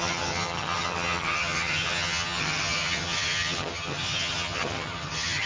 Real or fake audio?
fake